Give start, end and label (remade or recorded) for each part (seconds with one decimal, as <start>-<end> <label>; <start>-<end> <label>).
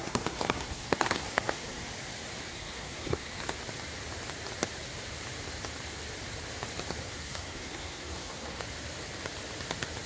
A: 0.0-1.9 remade; 1.9-2.5 recorded; 2.5-3.4 remade; 3.4-7.0 recorded; 7.0-8.6 remade; 8.6-10.1 recorded